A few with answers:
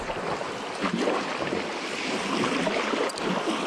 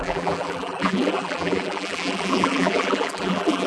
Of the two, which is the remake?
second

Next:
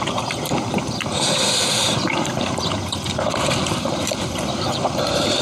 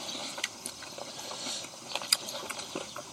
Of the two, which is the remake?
first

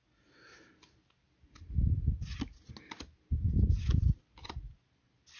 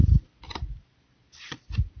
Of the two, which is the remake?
second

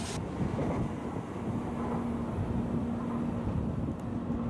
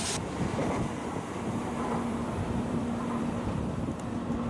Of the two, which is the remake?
second